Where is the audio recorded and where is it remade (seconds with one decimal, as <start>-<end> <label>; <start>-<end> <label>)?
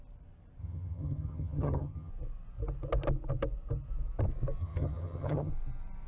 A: 0.0-0.6 recorded; 0.6-2.1 remade; 2.1-4.6 recorded; 4.6-5.5 remade; 5.5-6.1 recorded